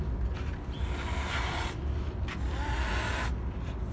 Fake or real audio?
real